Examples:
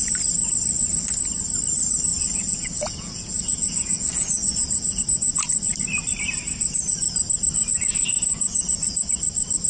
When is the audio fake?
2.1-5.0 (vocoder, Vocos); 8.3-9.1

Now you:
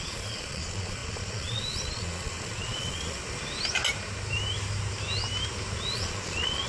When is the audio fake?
0.0-3.2 (vocoder, Vocos); 5.9-6.7

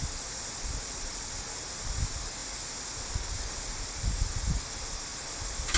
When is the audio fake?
none

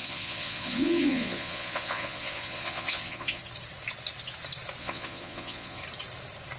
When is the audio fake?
0.0-3.4 (vocoder, Vocos); 4.8-5.8

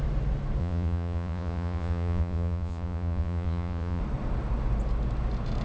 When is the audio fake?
0.6-4.0 (vocoder, Vocos)

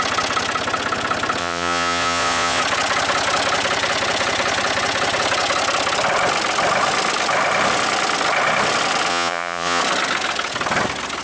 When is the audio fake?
1.4-2.6 (vocoder, Vocos); 9.1-9.8